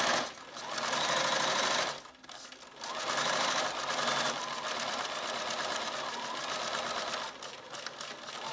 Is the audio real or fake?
real